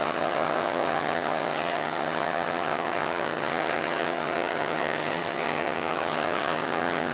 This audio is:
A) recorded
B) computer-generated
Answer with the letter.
B